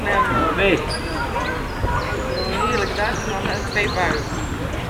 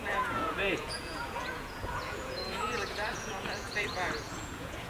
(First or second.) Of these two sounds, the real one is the first